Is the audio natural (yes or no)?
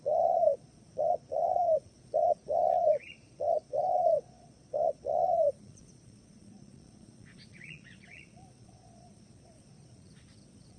no